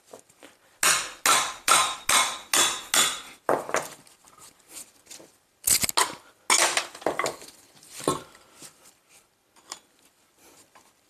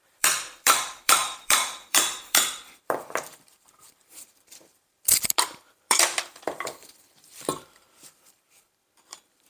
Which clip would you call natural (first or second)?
first